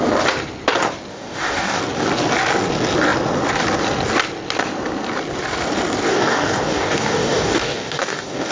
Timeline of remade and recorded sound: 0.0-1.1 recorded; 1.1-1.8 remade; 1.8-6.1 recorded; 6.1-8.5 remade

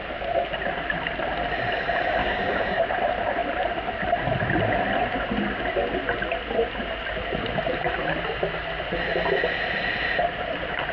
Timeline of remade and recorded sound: 0.0-2.2 recorded; 2.2-2.8 remade; 2.8-10.9 recorded

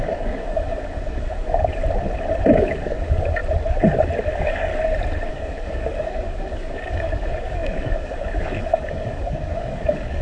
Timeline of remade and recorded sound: 0.0-1.8 remade; 1.8-2.5 recorded; 2.5-3.4 remade; 3.4-4.3 recorded; 4.3-4.7 remade; 4.7-5.3 recorded; 5.3-10.2 remade